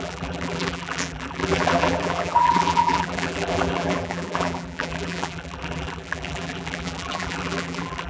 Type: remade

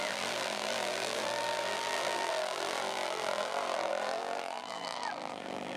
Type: remade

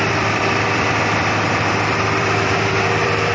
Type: remade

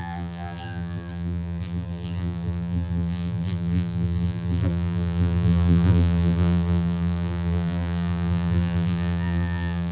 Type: remade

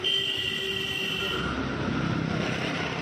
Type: recorded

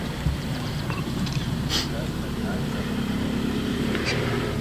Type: remade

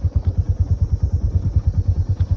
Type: recorded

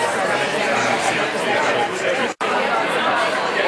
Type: remade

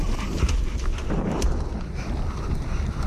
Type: remade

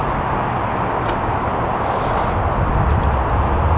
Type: recorded